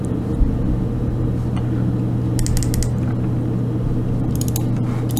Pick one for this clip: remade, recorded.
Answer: recorded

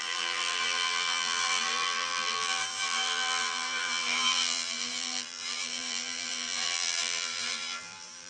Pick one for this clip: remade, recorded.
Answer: remade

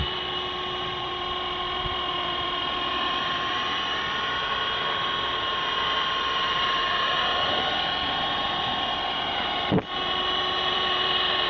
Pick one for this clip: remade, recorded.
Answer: remade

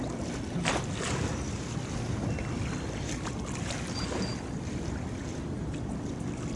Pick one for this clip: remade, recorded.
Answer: recorded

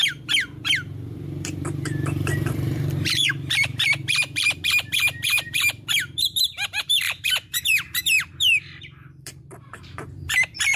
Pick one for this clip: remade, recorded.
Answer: remade